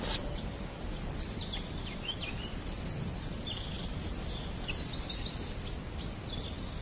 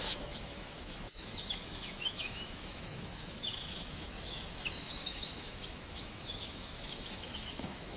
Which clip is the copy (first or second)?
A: second